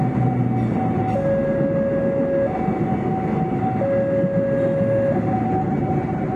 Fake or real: real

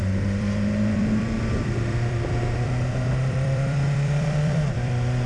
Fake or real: fake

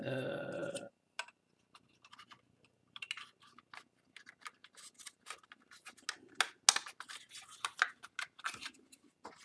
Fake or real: real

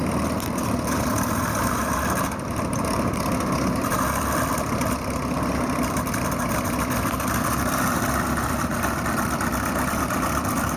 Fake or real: fake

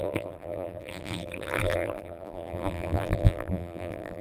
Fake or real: fake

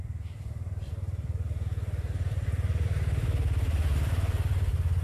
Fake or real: fake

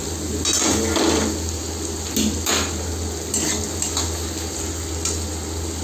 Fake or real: real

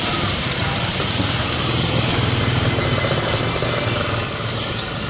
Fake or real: fake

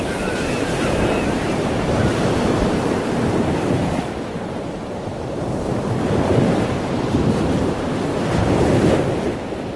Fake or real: fake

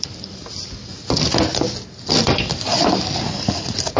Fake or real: real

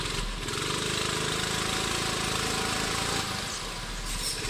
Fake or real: real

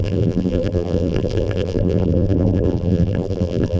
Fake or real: fake